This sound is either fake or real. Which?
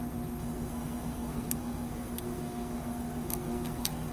fake